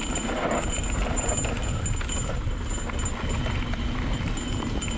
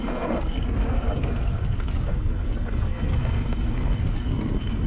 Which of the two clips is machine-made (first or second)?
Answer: second